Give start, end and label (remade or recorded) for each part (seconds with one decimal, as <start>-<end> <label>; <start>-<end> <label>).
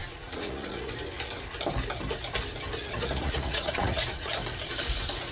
0.0-0.9 remade; 0.9-2.8 recorded; 2.8-4.3 remade; 4.3-5.3 recorded